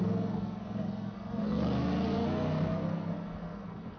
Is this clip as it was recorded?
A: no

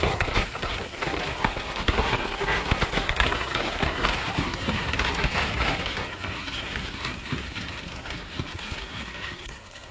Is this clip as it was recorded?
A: no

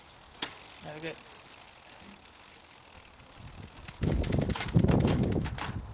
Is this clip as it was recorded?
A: yes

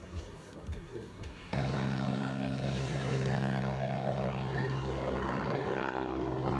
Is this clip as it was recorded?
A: no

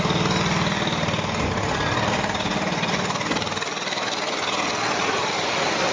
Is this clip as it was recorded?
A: yes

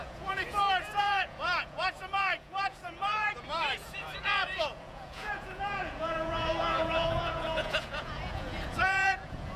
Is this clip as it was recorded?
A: no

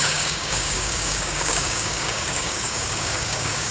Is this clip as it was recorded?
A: no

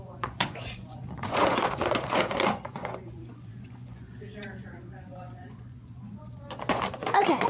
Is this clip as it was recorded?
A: no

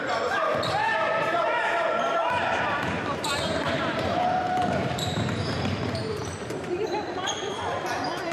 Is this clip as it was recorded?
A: no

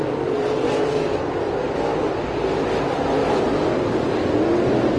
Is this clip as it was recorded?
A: yes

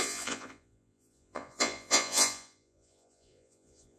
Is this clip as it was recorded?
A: no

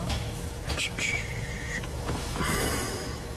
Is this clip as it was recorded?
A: no